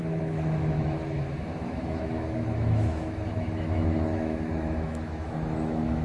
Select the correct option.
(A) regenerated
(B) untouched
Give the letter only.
A